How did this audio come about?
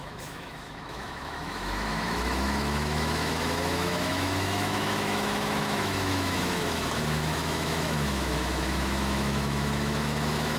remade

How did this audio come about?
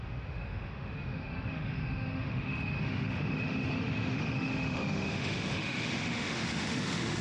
remade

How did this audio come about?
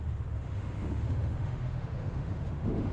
remade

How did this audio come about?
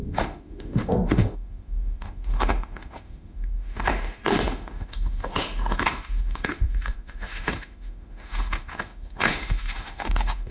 remade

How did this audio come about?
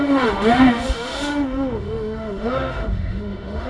remade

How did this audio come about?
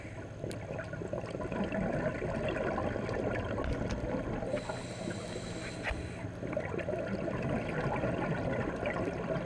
recorded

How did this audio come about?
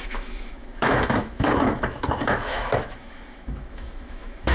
remade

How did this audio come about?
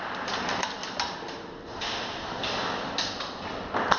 recorded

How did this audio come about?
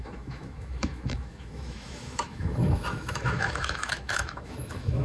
remade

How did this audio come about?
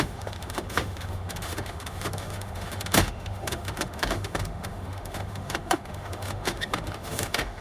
remade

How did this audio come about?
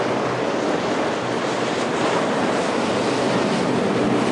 recorded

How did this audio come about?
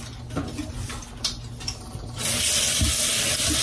recorded